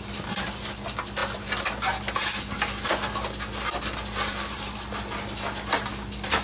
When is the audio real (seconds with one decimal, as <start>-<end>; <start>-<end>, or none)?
0.0-4.3; 4.9-6.4